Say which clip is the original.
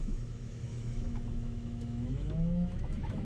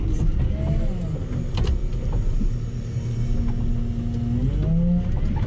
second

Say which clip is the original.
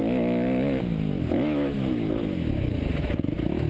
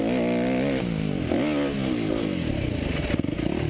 second